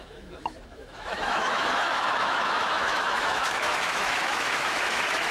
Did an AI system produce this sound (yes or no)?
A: yes